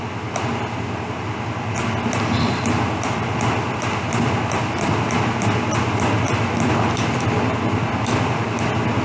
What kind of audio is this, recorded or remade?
recorded